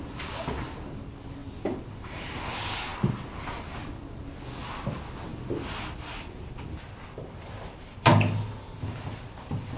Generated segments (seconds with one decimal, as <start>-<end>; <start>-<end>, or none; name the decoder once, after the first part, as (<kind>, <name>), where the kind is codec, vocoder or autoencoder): none